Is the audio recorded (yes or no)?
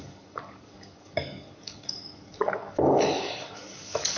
no